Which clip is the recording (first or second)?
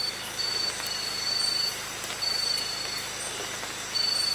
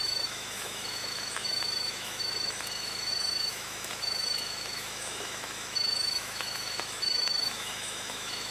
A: first